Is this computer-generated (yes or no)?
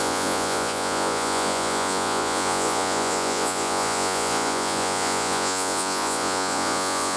yes